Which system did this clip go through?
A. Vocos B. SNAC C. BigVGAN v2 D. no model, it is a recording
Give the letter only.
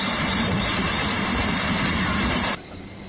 C